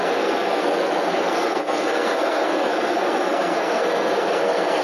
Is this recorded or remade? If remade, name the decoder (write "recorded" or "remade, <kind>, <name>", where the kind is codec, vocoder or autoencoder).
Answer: remade, codec, SNAC